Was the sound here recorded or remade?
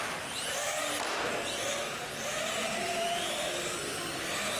recorded